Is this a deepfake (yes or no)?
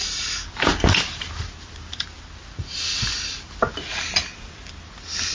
no